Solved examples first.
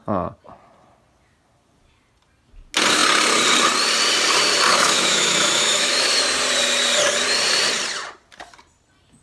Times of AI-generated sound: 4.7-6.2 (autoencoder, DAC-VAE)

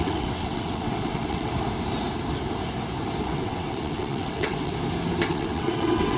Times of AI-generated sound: 0.0-1.5 (vocoder, WaveNeXt); 3.2-4.7; 5.3-6.2